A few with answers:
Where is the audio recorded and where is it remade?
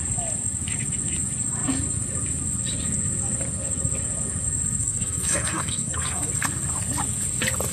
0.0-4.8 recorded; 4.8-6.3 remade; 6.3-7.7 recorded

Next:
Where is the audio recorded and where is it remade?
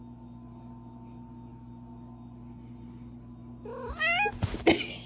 0.0-5.1 recorded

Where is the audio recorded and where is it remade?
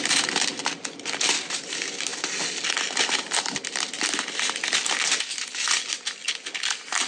0.0-7.1 recorded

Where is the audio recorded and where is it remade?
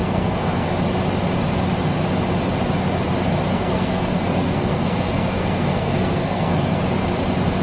0.0-0.7 remade; 0.7-3.5 recorded; 3.5-6.8 remade; 6.8-7.6 recorded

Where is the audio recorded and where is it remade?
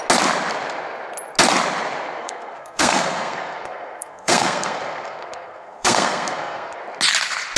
0.0-2.2 recorded; 2.2-6.8 remade; 6.8-7.6 recorded